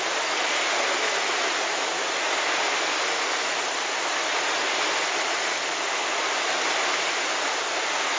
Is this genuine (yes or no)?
yes